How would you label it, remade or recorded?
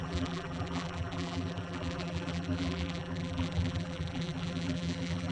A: remade